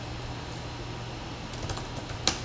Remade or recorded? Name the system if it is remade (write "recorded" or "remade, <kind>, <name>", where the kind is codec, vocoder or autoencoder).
recorded